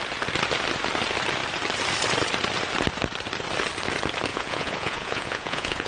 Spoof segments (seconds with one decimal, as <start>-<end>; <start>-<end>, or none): 4.3-5.9